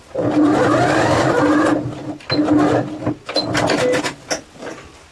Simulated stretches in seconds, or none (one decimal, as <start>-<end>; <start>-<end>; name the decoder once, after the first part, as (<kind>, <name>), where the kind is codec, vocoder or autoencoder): none